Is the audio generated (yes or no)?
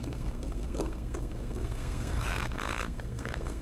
yes